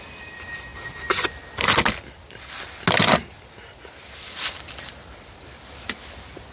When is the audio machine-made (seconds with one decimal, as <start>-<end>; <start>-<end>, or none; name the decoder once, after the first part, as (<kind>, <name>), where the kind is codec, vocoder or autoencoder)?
none